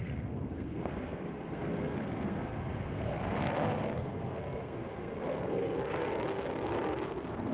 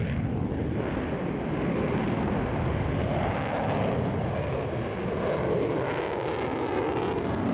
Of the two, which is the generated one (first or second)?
first